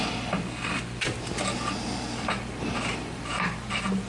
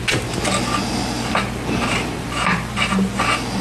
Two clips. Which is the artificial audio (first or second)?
first